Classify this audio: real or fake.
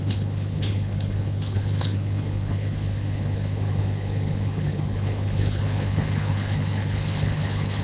fake